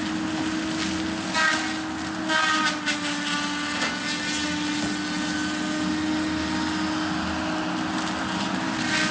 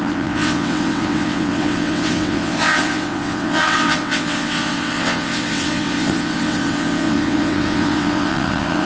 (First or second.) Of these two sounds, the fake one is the second